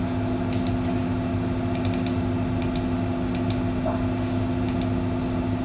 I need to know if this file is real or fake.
real